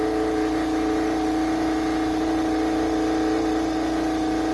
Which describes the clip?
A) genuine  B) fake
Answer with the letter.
A